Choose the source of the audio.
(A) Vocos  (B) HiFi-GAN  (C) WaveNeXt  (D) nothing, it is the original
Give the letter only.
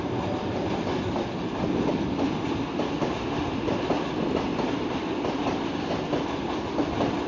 D